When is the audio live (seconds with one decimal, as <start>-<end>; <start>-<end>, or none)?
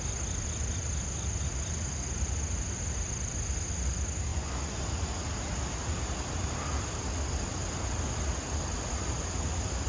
0.0-4.3; 4.8-9.9